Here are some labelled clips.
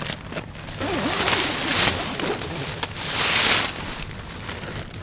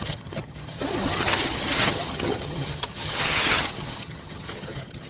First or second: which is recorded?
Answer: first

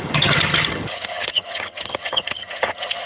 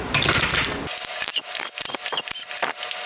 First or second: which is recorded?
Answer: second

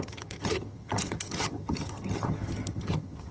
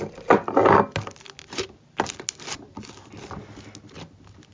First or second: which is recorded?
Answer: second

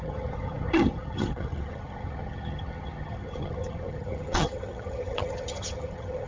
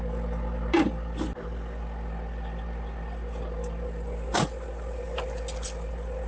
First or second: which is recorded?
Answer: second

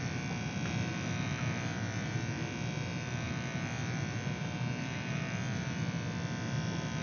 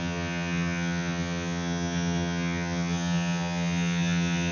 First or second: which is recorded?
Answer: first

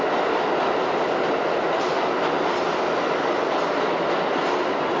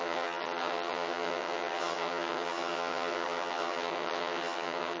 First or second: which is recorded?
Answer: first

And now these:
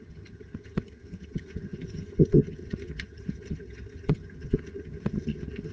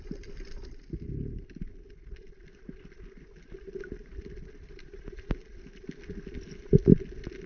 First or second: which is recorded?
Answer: second